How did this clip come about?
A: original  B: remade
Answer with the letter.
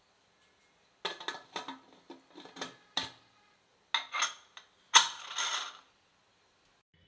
A